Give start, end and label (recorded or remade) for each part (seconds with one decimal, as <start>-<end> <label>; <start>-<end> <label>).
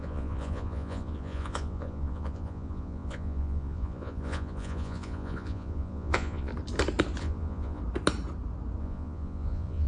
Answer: 0.0-6.5 remade; 6.5-7.2 recorded; 7.2-7.8 remade; 7.8-8.8 recorded; 8.8-9.9 remade